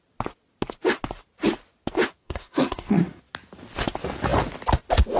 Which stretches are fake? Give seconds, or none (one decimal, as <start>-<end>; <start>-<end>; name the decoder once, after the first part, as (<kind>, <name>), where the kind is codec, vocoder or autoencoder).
2.2-3.2 (codec, SNAC)